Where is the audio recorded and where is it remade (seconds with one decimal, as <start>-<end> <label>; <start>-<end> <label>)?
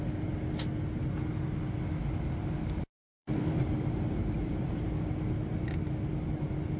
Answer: 0.0-3.1 recorded; 3.1-4.8 remade; 4.8-6.8 recorded